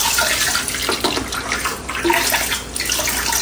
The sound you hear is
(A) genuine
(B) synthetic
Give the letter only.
A